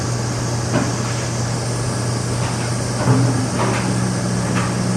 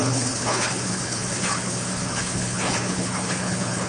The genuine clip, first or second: first